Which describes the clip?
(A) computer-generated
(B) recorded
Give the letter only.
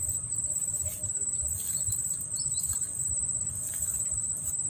B